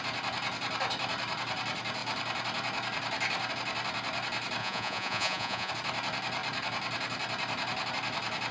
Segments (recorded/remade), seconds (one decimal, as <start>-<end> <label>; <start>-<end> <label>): 0.0-4.6 recorded; 4.6-5.7 remade; 5.7-8.5 recorded